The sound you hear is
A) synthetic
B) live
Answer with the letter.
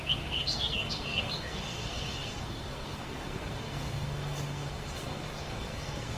A